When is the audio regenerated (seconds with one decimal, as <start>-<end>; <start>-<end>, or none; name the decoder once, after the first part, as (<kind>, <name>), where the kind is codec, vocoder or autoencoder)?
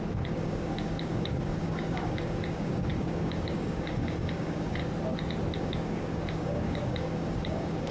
0.0-4.8 (codec, DAC); 5.6-7.9